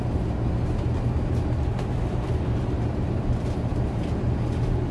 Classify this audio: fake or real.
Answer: real